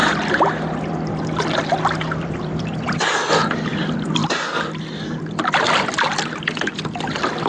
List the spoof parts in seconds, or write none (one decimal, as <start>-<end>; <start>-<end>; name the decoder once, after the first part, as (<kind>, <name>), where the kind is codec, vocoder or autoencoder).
none